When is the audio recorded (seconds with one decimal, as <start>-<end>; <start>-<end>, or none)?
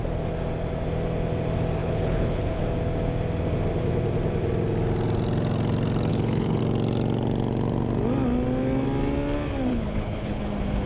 0.0-1.8; 2.6-6.1; 6.6-9.7; 10.4-10.9